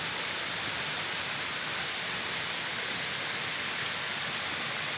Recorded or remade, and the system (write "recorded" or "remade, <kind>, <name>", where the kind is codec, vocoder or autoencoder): recorded